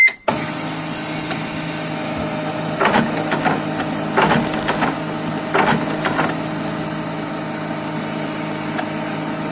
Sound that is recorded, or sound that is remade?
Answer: recorded